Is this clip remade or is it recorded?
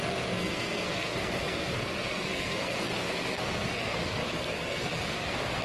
remade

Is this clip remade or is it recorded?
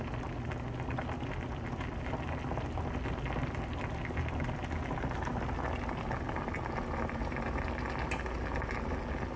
recorded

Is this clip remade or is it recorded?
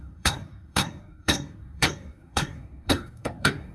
remade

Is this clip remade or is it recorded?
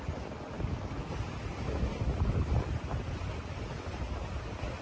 recorded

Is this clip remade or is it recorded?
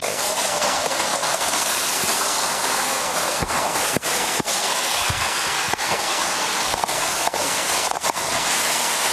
remade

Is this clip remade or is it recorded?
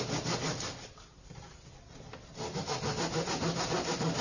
recorded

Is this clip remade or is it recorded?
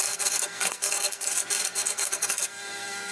remade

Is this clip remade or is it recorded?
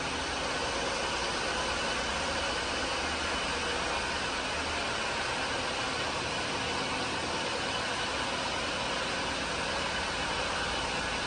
recorded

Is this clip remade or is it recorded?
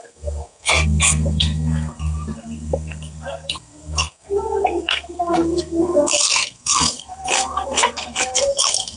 remade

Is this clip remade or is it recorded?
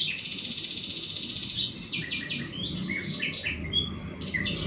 recorded